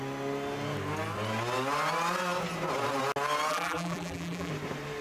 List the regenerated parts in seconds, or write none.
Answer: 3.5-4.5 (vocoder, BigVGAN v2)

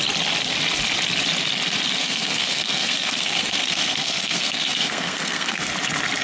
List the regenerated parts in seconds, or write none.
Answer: 2.0-5.7 (codec, SNAC)

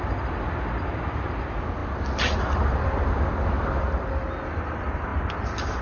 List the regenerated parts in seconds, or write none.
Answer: none

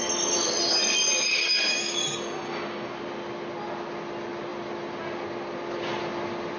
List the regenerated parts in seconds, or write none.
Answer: 1.3-2.9 (codec, DAC)